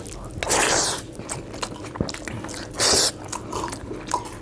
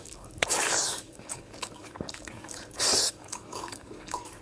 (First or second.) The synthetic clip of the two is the second